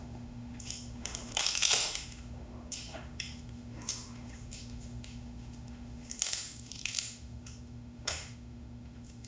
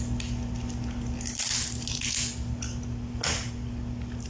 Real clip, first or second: second